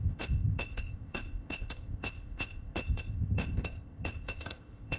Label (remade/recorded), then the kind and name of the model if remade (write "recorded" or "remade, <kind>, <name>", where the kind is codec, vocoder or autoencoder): remade, codec, ZipCodec